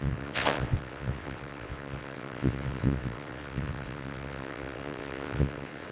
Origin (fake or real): fake